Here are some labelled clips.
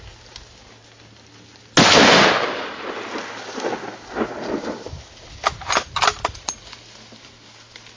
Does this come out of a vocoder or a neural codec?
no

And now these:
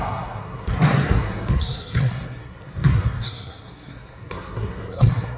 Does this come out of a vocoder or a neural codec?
yes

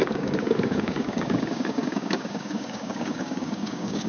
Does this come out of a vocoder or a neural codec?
yes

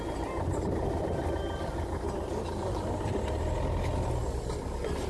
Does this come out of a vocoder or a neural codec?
no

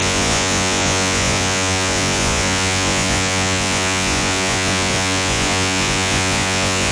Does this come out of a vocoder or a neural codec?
yes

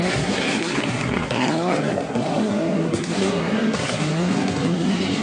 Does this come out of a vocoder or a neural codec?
yes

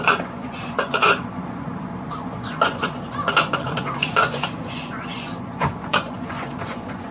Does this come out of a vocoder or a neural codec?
yes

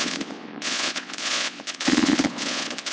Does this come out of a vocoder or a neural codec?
yes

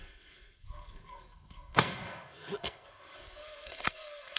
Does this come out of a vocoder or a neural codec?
yes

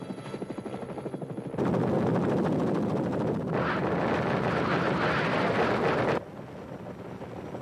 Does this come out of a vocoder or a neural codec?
no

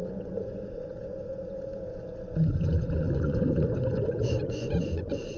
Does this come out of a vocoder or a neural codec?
yes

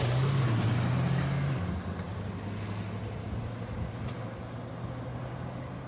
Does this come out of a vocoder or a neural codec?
no